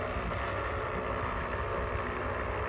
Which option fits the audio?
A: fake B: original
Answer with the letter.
B